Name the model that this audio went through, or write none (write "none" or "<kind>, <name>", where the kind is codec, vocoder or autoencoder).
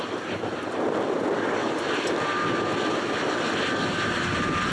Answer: none